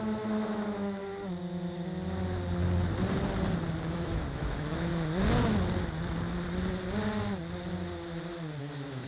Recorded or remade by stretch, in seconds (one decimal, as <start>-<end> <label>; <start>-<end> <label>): 0.0-1.0 remade; 1.0-3.9 recorded; 3.9-4.9 remade; 4.9-8.6 recorded; 8.6-9.1 remade